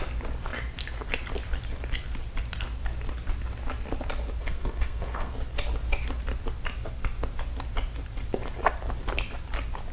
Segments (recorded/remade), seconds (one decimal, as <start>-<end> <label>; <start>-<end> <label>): 0.0-4.4 recorded; 4.4-5.3 remade; 5.3-9.9 recorded